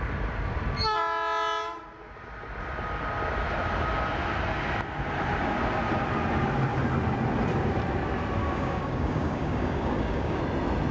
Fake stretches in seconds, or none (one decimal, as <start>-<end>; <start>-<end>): 8.4-10.4